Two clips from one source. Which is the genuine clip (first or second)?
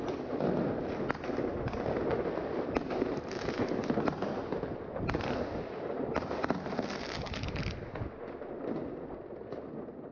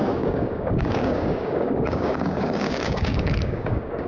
first